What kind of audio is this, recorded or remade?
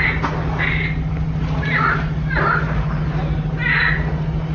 recorded